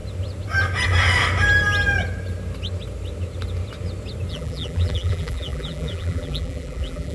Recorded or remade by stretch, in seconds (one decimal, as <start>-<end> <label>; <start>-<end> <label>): 0.0-4.3 recorded; 4.3-7.1 remade